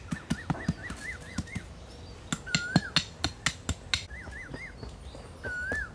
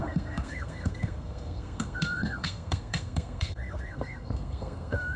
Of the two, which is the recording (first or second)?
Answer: first